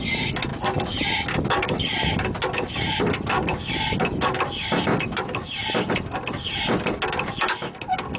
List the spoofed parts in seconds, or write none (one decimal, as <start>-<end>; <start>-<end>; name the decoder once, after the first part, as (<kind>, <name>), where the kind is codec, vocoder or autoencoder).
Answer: none

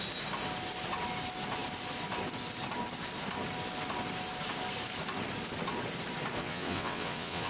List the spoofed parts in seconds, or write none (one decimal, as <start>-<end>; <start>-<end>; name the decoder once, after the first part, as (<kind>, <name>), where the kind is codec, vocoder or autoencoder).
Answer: 6.4-7.5 (vocoder, WaveNeXt)